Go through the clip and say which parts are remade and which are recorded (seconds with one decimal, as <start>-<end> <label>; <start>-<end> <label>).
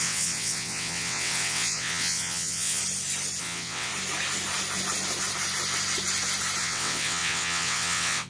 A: 0.0-2.8 remade; 2.8-3.4 recorded; 3.4-3.9 remade; 3.9-6.6 recorded; 6.6-8.3 remade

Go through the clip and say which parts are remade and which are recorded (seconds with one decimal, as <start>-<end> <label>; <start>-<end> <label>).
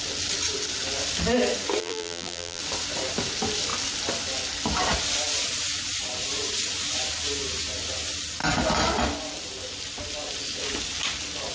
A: 0.0-1.8 recorded; 1.8-2.6 remade; 2.6-11.5 recorded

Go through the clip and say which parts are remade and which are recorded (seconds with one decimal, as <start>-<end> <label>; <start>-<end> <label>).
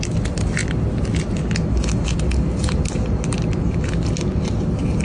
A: 0.0-5.0 recorded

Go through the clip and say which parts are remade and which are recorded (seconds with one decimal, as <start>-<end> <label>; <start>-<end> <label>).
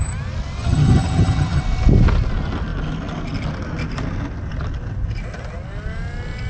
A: 0.0-0.6 recorded; 0.6-1.6 remade; 1.6-6.5 recorded